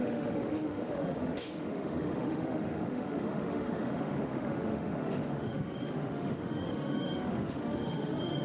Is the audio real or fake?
fake